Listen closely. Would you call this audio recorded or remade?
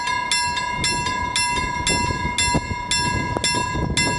recorded